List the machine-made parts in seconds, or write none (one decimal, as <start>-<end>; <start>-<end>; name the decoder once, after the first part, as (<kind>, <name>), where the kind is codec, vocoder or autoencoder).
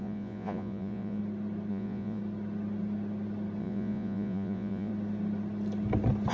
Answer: 0.0-1.2 (vocoder, Vocos); 1.7-2.2; 3.6-4.9